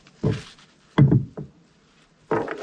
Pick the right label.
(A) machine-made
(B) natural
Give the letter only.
B